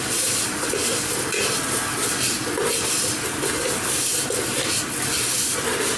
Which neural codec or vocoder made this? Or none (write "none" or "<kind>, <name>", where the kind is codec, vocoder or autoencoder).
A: none